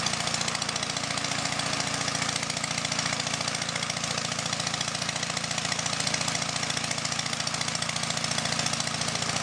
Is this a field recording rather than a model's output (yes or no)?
yes